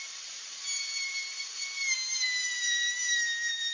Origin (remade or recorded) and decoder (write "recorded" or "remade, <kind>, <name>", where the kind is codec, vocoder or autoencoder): remade, vocoder, BigVGAN v2